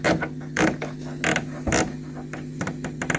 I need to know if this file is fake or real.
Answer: real